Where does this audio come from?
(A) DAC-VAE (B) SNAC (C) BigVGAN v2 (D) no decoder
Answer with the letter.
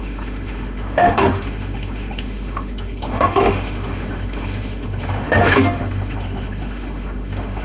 A